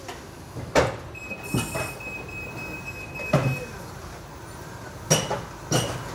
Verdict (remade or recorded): recorded